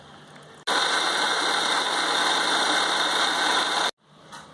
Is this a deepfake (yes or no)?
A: no